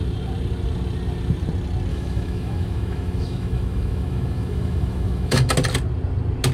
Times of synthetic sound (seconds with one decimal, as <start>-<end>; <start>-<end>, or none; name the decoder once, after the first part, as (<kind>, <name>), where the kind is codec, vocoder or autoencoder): 1.9-5.5 (autoencoder, DAC-VAE)